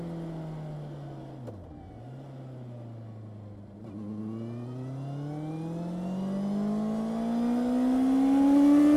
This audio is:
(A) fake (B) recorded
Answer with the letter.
B